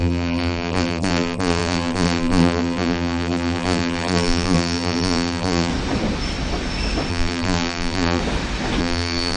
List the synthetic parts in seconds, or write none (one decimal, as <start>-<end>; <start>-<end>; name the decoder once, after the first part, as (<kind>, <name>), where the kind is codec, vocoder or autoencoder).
0.0-5.7 (vocoder, BigVGAN v2); 7.1-8.2; 8.8-9.4